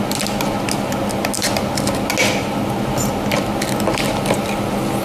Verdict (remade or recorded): recorded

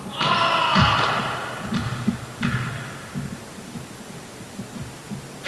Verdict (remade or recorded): recorded